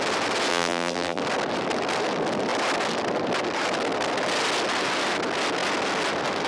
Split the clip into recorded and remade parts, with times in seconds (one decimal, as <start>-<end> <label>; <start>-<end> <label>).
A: 0.0-0.5 recorded; 0.5-1.2 remade; 1.2-6.5 recorded